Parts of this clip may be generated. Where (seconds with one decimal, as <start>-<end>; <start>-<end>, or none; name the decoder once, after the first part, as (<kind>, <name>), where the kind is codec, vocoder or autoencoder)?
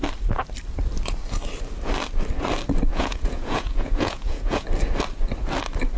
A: 2.9-4.7 (vocoder, Vocos)